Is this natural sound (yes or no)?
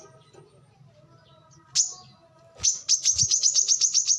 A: yes